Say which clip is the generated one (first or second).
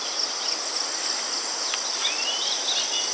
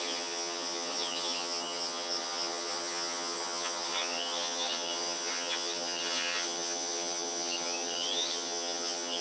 second